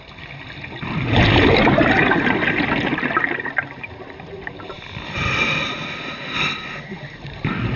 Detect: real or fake real